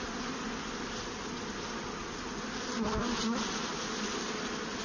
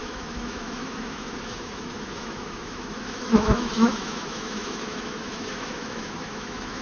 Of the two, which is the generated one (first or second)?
second